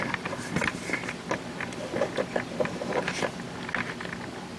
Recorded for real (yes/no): yes